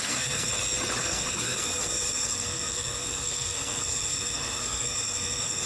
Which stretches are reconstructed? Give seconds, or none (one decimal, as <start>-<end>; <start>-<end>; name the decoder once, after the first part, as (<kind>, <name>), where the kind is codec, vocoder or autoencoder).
0.0-0.5 (codec, SNAC); 1.0-5.7